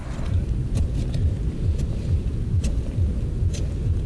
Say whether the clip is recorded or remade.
recorded